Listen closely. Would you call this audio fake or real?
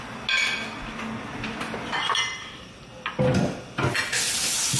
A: real